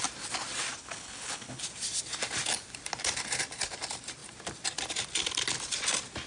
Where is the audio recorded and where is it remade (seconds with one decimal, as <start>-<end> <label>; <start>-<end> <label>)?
0.0-0.8 recorded; 0.8-1.6 remade; 1.6-6.3 recorded